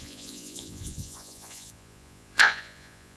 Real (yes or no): no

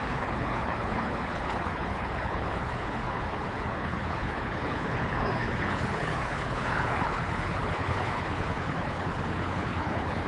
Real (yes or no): no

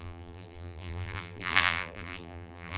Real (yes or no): no